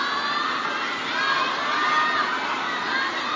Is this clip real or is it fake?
real